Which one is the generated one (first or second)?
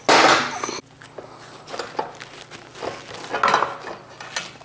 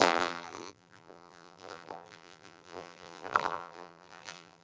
second